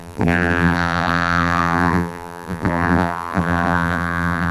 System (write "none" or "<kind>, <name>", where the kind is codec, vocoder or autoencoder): vocoder, BigVGAN v2